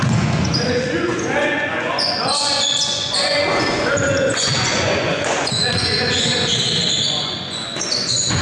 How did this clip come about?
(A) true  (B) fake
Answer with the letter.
B